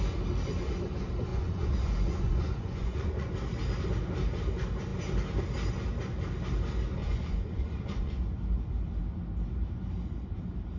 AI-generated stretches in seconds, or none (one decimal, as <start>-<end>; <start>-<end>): 1.3-3.3; 7.0-8.2